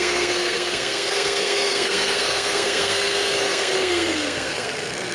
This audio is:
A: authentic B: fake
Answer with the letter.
B